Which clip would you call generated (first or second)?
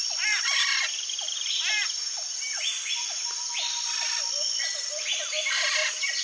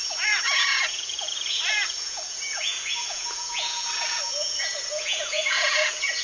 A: second